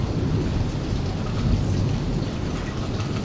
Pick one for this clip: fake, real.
real